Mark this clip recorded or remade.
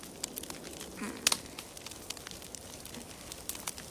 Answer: recorded